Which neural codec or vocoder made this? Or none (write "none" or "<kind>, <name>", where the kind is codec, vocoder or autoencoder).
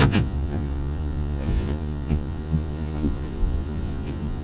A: vocoder, Vocos